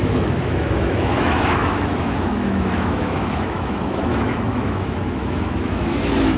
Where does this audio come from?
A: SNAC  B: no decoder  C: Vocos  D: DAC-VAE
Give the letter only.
D